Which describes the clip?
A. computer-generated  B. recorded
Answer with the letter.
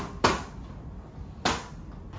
B